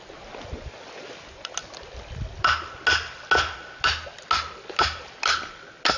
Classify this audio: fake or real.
real